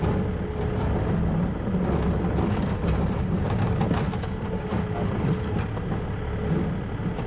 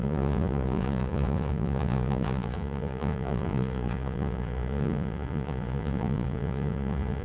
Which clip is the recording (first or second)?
first